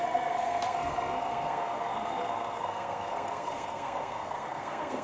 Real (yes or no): no